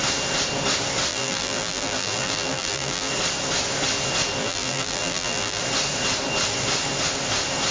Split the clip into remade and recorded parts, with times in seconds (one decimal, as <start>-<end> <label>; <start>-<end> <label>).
0.0-1.1 recorded; 1.1-3.1 remade; 3.1-4.4 recorded; 4.4-5.6 remade; 5.6-7.7 recorded